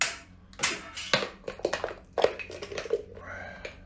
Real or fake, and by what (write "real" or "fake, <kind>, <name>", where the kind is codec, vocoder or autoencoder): real